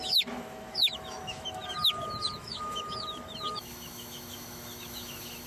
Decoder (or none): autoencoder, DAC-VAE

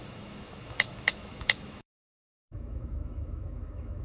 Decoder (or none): autoencoder, DAC-VAE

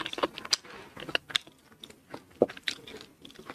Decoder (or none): none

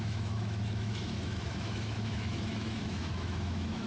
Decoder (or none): autoencoder, DAC-VAE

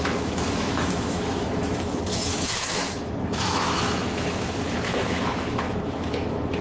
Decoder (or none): autoencoder, DAC-VAE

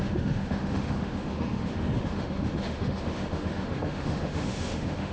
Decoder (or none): autoencoder, DAC-VAE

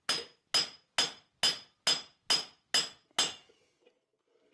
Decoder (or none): none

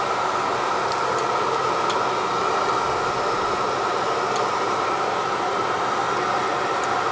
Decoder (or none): none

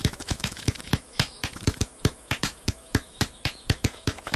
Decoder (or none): autoencoder, DAC-VAE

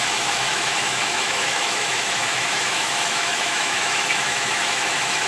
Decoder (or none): autoencoder, DAC-VAE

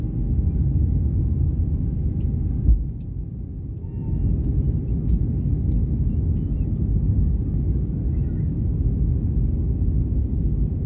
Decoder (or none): none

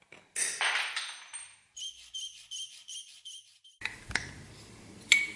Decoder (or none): none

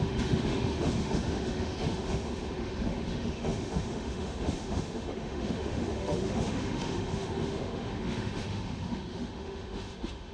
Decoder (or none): autoencoder, DAC-VAE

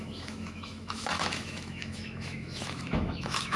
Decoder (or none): autoencoder, DAC-VAE